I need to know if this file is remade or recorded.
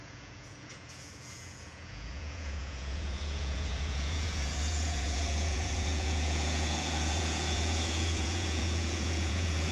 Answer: remade